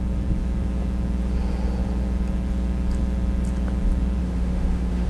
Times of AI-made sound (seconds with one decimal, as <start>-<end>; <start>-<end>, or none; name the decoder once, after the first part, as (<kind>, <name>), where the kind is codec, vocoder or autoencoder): 4.2-5.1 (autoencoder, DAC-VAE)